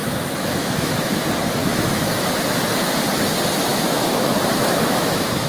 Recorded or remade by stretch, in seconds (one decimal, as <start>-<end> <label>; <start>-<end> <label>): 0.0-1.2 remade; 1.2-1.6 recorded; 1.6-2.3 remade; 2.3-3.7 recorded; 3.7-5.5 remade